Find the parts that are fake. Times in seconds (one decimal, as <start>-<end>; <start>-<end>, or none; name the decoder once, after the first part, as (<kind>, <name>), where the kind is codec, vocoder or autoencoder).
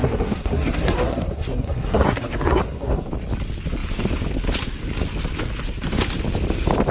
0.0-3.1 (codec, SNAC)